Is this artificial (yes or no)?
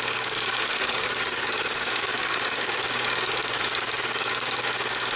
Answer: yes